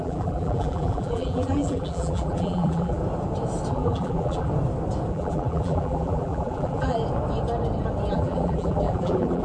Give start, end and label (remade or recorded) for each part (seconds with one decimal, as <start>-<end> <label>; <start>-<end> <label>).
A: 0.0-3.0 remade; 3.0-3.7 recorded; 3.7-4.5 remade; 4.5-5.1 recorded; 5.1-7.0 remade; 7.0-8.1 recorded; 8.1-9.4 remade